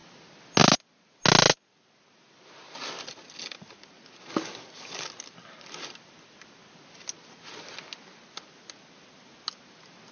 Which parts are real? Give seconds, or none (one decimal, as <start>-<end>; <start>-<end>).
0.0-10.1

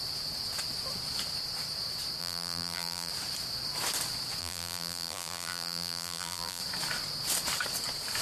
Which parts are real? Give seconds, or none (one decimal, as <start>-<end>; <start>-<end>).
0.0-2.2; 3.1-4.4; 6.6-8.2

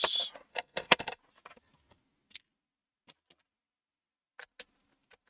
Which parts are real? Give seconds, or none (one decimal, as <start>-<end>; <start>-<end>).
0.0-0.5; 1.2-5.3

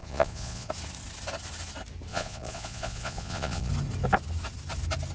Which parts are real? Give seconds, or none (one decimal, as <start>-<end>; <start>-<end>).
0.7-2.1; 3.7-5.1